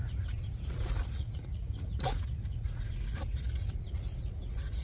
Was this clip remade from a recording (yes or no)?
yes